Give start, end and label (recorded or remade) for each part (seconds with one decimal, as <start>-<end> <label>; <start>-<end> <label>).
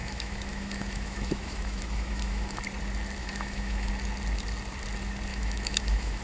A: 0.0-2.6 remade; 2.6-3.2 recorded; 3.2-3.9 remade; 3.9-5.3 recorded; 5.3-6.2 remade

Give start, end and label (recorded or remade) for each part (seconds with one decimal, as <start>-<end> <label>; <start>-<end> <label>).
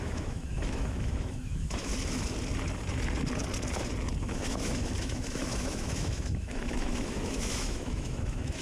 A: 0.0-1.9 remade; 1.9-4.2 recorded; 4.2-8.6 remade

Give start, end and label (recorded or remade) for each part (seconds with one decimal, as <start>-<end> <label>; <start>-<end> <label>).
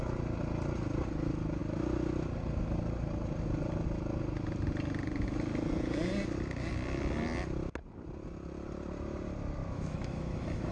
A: 0.0-9.6 recorded; 9.6-10.7 remade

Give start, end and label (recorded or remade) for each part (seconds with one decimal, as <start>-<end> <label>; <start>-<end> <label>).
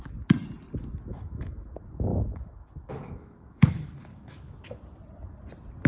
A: 0.0-1.1 recorded; 1.1-1.7 remade; 1.7-2.1 recorded; 2.1-4.8 remade; 4.8-5.9 recorded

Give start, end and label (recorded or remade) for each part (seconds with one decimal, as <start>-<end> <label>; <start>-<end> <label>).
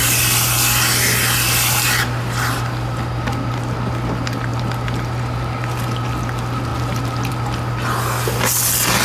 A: 0.0-9.0 recorded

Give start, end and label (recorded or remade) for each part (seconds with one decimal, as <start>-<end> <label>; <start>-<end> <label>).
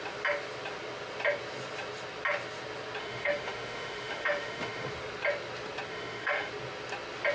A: 0.0-3.0 recorded; 3.0-4.9 remade; 4.9-5.9 recorded; 5.9-6.5 remade; 6.5-7.3 recorded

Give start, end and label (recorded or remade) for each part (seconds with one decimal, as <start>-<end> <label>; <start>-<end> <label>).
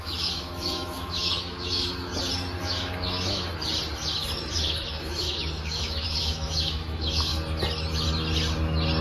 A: 0.0-2.1 remade; 2.1-2.6 recorded; 2.6-3.5 remade; 3.5-4.5 recorded; 4.5-7.3 remade; 7.3-9.0 recorded